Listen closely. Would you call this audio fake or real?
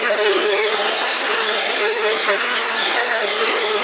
fake